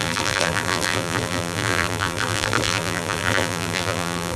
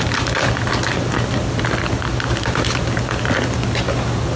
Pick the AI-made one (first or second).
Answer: first